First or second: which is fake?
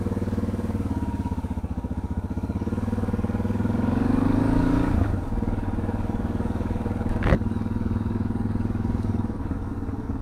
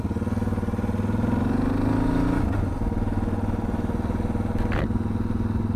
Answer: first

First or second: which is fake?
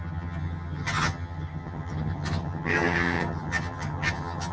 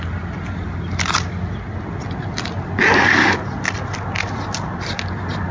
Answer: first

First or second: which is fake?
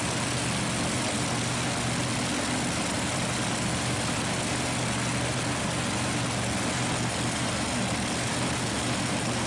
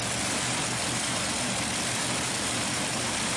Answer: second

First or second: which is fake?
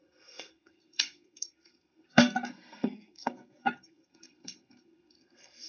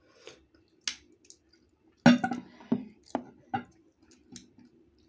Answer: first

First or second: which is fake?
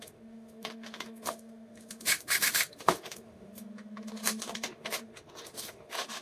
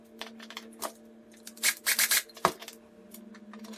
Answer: first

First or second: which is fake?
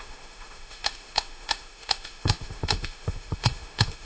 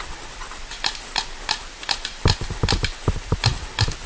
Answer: first